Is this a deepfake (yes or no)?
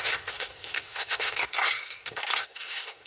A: yes